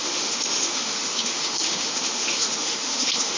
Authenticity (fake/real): fake